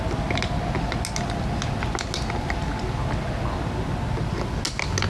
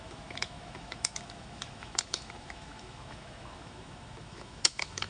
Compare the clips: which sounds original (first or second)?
first